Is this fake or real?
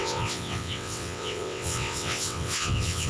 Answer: fake